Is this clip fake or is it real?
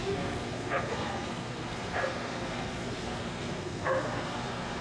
fake